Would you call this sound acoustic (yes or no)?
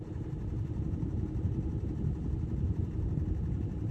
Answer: no